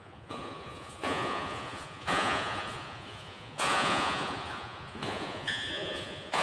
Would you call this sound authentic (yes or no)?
no